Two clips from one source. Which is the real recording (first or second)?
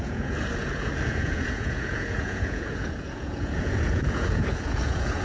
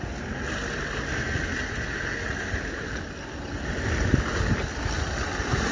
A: second